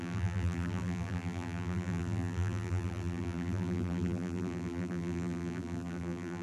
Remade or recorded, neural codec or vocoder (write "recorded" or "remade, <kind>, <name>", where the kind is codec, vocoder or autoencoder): remade, vocoder, BigVGAN v2